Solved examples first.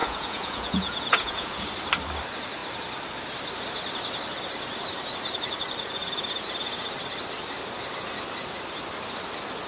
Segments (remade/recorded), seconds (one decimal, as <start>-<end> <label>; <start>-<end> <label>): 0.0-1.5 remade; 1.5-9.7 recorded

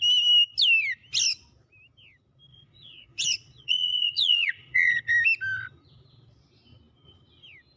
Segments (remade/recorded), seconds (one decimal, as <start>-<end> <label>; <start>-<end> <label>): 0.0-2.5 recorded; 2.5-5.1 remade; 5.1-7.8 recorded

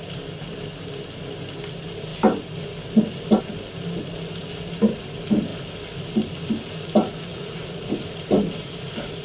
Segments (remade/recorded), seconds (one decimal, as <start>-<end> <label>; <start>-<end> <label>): 0.0-7.3 recorded; 7.3-7.9 remade; 7.9-9.2 recorded